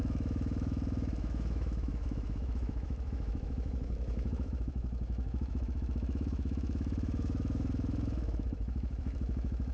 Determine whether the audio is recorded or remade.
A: remade